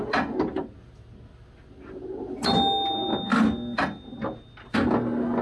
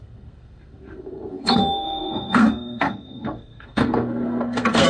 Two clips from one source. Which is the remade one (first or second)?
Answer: second